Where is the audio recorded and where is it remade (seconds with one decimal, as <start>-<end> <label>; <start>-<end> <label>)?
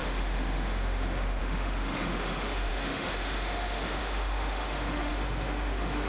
0.0-6.1 remade